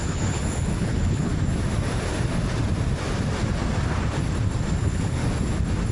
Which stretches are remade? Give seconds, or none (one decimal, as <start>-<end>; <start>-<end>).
0.0-1.3; 4.8-5.2